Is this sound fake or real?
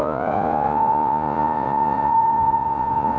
fake